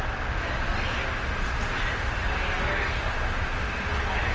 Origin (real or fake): real